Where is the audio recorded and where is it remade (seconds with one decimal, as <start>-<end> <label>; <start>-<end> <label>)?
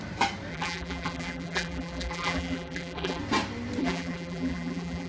0.0-0.5 recorded; 0.5-3.2 remade; 3.2-3.8 recorded; 3.8-5.1 remade